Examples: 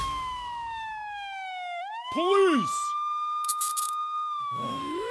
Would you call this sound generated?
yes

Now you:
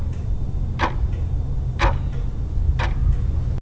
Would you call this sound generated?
no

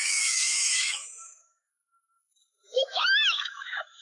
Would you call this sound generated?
yes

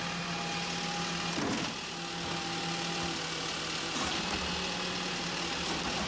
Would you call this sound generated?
no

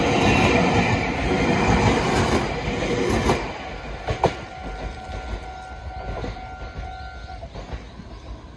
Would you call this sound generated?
no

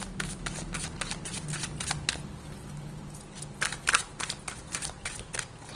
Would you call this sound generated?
no